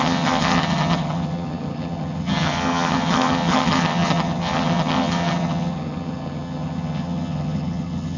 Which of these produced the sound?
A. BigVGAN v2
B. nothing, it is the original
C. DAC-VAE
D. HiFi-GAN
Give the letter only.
D